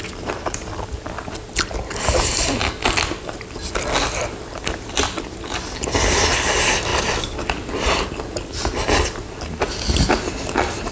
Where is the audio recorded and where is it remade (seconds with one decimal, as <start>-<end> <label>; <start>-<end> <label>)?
0.0-10.9 recorded